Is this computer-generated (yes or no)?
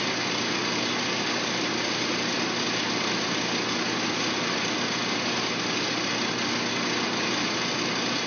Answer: no